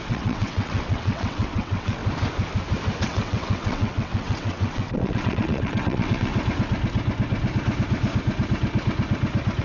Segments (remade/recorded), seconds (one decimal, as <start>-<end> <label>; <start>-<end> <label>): 0.0-2.0 remade; 2.0-3.0 recorded; 3.0-6.3 remade; 6.3-9.6 recorded